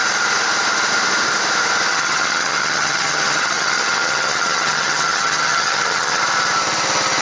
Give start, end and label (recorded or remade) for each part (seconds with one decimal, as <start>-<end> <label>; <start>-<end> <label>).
0.0-1.9 recorded; 1.9-6.2 remade; 6.2-7.2 recorded